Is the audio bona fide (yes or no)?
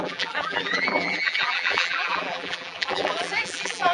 no